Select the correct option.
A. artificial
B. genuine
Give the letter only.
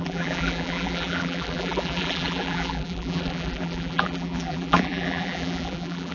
A